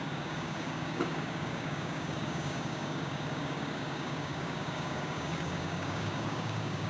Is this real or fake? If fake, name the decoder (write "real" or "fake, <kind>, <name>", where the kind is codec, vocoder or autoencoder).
fake, codec, DAC